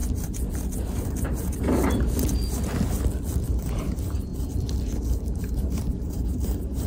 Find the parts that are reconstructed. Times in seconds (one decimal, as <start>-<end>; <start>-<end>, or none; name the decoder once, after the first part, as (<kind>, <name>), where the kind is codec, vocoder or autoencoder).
3.5-4.3 (vocoder, BigVGAN v2); 5.4-6.9